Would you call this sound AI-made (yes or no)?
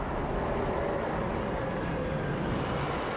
no